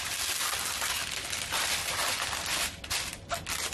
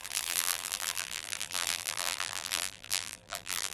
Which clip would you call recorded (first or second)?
first